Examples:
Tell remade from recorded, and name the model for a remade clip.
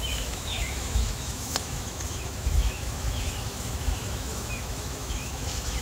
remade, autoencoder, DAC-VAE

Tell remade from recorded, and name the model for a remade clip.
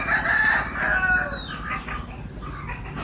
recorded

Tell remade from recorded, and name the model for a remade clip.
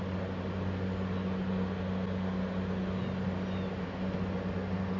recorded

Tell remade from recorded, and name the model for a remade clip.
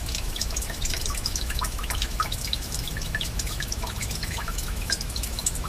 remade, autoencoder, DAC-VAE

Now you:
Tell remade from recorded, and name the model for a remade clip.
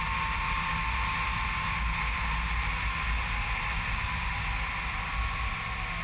recorded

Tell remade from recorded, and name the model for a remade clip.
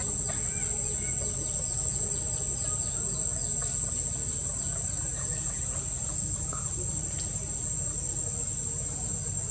recorded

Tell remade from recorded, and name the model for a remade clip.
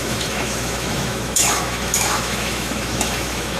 remade, autoencoder, DAC-VAE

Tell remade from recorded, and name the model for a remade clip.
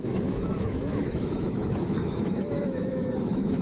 remade, autoencoder, DAC-VAE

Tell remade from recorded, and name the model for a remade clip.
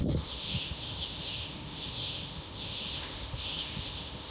remade, autoencoder, DAC-VAE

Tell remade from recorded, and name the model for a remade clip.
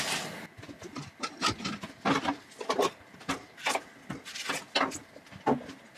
recorded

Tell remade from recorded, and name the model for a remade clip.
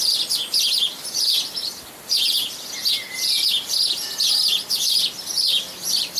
recorded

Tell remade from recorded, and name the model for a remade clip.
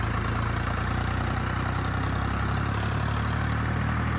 recorded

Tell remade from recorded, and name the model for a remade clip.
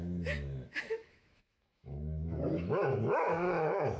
remade, autoencoder, DAC-VAE